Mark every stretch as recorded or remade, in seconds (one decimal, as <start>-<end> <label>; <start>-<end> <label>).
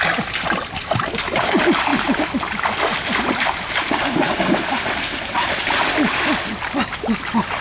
0.0-7.6 recorded